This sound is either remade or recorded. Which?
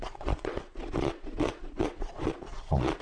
remade